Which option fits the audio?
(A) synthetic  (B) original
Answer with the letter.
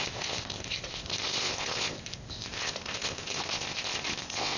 A